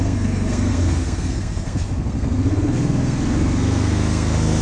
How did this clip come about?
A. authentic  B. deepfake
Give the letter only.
B